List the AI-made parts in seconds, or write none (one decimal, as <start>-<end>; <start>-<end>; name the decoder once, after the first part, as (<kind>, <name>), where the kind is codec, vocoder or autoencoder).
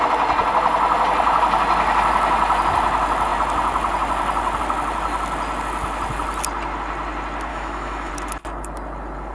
7.5-8.1 (autoencoder, DAC-VAE)